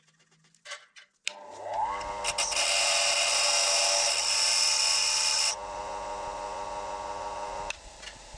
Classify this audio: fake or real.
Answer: real